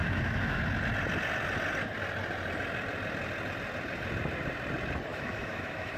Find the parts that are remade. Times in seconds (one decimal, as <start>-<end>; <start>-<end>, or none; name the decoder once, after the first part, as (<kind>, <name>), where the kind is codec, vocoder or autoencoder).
0.0-0.6 (autoencoder, DAC-VAE); 5.1-6.0